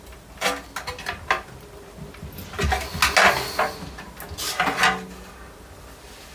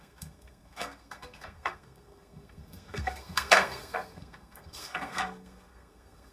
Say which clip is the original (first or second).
first